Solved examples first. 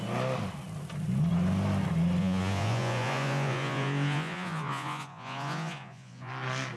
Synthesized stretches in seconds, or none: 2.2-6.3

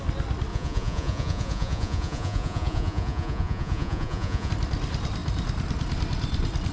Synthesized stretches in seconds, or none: 0.5-4.5

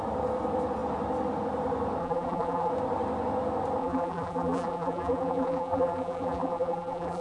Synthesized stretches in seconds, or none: 2.0-2.7; 3.8-7.2

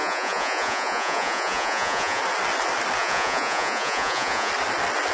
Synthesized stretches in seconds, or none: 0.0-2.2; 3.0-4.5

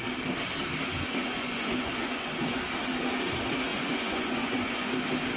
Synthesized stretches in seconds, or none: 0.9-2.6; 3.7-4.9